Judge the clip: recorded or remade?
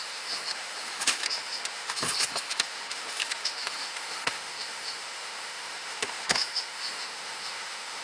remade